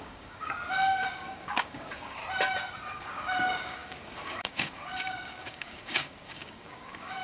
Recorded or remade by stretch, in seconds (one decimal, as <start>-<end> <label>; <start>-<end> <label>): 0.0-2.2 remade; 2.2-2.9 recorded; 2.9-7.2 remade